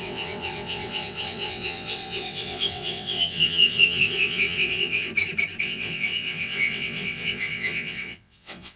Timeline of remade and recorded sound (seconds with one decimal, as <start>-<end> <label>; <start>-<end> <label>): 0.0-5.1 remade; 5.1-5.6 recorded; 5.6-8.8 remade